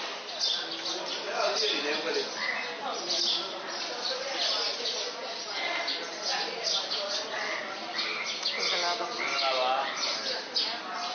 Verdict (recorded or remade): recorded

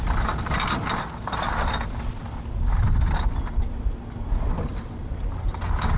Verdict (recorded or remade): recorded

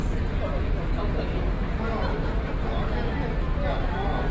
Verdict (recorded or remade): recorded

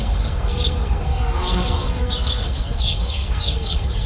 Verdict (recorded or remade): remade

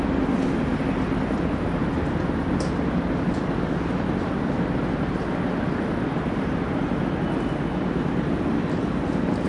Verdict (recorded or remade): recorded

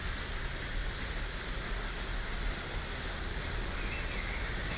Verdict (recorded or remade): recorded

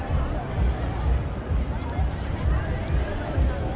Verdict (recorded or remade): recorded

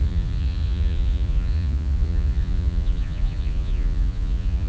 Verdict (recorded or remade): remade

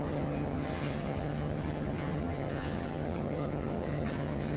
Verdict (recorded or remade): remade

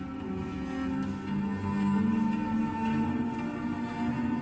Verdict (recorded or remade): recorded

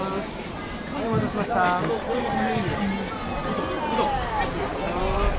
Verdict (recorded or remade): recorded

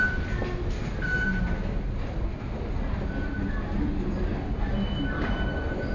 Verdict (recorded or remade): recorded